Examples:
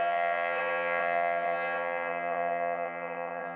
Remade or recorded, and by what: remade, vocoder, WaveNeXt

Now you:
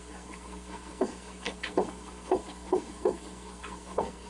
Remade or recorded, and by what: remade, codec, SNAC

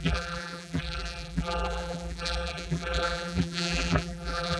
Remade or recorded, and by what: remade, vocoder, BigVGAN v2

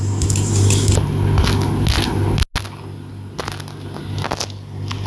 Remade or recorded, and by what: recorded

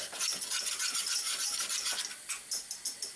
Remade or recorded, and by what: recorded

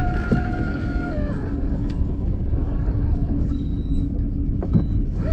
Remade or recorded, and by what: remade, codec, DAC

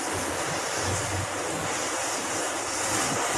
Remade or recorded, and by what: recorded